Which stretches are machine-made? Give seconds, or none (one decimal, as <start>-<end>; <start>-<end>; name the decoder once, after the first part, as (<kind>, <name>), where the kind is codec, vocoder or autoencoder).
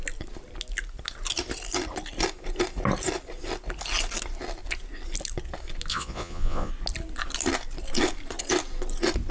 5.9-6.7 (vocoder, Vocos)